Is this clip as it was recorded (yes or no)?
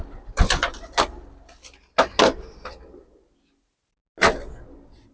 yes